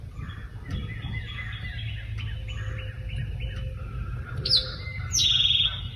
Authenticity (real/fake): real